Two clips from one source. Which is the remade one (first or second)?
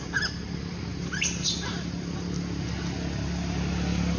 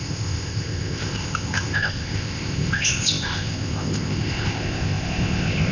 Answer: second